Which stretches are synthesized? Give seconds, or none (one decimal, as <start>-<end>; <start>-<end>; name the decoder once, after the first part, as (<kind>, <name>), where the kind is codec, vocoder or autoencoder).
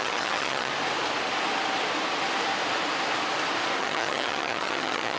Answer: 0.0-0.7 (vocoder, HiFi-GAN); 3.8-5.2